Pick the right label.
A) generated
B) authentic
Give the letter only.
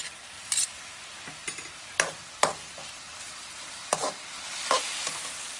B